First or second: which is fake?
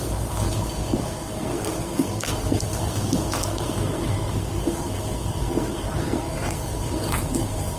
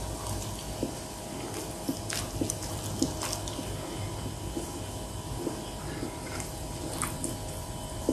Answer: first